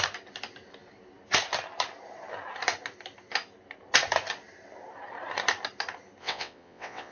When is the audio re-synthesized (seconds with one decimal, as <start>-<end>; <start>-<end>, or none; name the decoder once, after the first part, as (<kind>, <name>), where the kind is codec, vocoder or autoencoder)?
6.2-7.1 (vocoder, WaveNeXt)